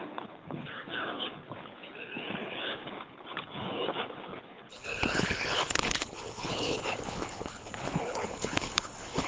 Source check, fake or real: fake